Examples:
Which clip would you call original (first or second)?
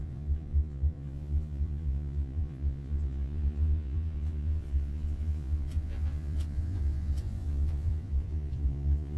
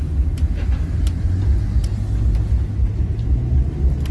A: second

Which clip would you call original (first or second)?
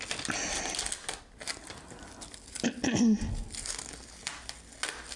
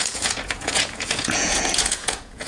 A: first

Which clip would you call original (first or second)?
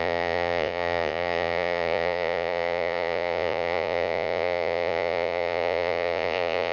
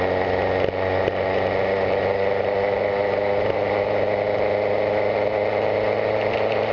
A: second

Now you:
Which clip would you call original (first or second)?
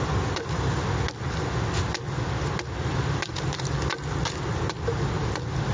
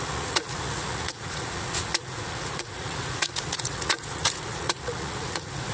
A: first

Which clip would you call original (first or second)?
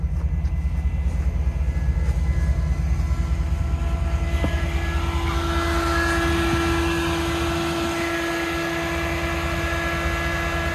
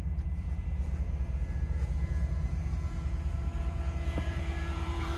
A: first